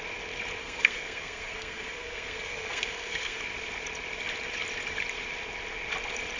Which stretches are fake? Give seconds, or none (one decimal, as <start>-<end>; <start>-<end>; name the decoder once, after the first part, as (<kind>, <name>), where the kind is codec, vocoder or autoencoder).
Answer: 0.6-3.4 (codec, SNAC)